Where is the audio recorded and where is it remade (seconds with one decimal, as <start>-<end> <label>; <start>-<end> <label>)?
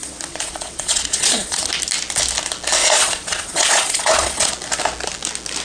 0.0-1.7 remade; 1.7-2.8 recorded; 2.8-4.5 remade; 4.5-5.6 recorded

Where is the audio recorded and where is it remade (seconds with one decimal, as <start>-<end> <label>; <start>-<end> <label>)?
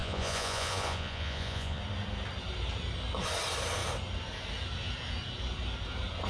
0.0-1.8 remade; 1.8-6.3 recorded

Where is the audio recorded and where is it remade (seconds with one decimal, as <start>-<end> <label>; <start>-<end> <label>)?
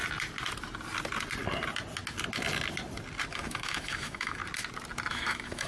0.0-3.3 recorded; 3.3-4.4 remade; 4.4-5.1 recorded; 5.1-5.7 remade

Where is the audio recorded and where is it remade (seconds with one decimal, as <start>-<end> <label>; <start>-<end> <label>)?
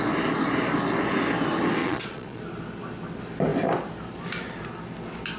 0.0-1.8 recorded; 1.8-2.4 remade; 2.4-5.4 recorded